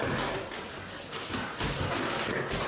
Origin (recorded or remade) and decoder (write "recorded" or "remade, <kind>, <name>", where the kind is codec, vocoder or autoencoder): recorded